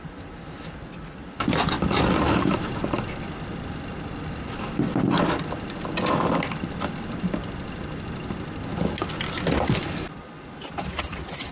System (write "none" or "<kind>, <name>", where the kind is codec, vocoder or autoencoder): none